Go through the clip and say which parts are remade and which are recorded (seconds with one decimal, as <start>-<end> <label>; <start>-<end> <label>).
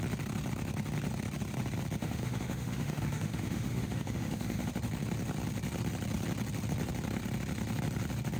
0.0-2.0 recorded; 2.0-4.7 remade; 4.7-8.4 recorded